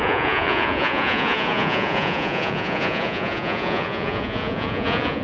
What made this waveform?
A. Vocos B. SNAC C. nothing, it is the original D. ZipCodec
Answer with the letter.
A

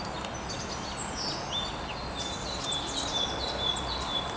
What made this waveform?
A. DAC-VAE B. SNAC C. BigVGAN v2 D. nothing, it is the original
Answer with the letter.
D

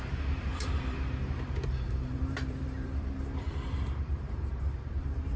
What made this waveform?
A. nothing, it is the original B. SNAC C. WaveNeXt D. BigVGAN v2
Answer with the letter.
D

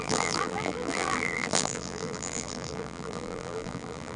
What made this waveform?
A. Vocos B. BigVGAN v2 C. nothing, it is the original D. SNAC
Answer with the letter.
B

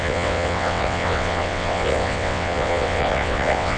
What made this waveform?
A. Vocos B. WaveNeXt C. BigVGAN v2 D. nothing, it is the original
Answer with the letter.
B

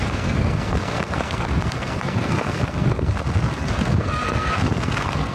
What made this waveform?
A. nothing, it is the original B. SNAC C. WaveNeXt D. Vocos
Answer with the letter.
B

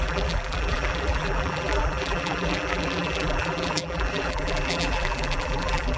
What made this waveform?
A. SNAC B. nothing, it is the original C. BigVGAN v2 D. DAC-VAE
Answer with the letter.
C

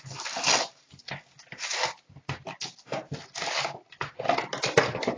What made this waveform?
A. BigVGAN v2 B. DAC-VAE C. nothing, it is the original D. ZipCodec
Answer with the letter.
C